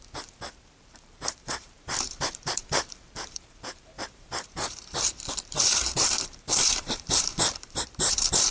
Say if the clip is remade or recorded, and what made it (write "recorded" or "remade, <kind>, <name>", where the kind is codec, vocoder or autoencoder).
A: remade, vocoder, BigVGAN v2